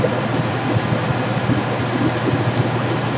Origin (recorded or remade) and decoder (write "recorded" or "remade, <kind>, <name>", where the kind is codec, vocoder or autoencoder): recorded